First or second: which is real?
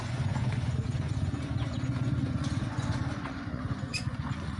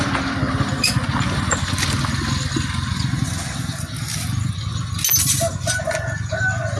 second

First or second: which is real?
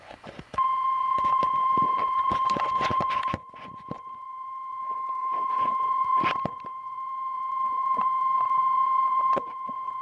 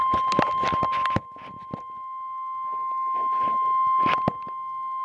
second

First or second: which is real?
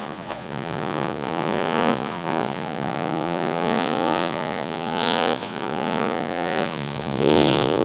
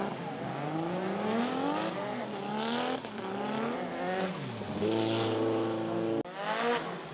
second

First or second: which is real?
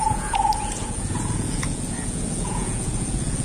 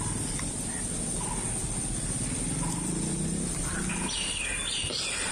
second